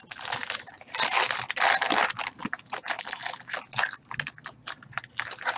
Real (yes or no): yes